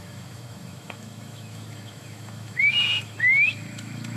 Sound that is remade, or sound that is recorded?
remade